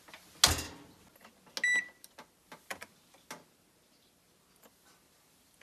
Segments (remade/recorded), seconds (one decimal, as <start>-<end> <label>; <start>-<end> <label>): 0.0-5.6 recorded